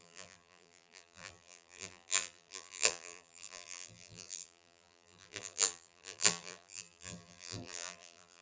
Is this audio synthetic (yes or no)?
yes